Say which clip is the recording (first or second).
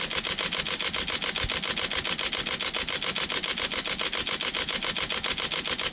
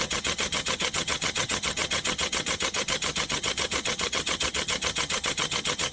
first